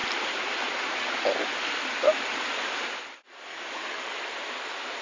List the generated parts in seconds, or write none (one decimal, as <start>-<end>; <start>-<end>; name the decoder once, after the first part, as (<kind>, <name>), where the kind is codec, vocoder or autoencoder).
3.5-4.2 (codec, DAC)